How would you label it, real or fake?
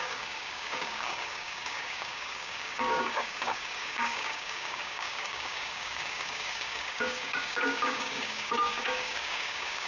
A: fake